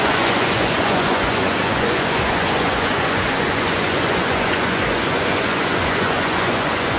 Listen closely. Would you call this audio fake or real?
fake